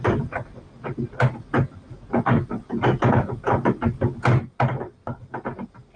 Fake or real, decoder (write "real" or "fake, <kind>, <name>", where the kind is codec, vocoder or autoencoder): real